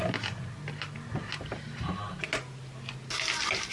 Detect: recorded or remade recorded